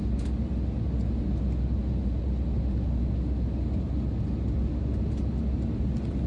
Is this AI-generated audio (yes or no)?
no